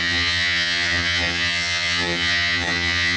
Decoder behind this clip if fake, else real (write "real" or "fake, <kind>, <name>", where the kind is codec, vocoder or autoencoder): fake, vocoder, HiFi-GAN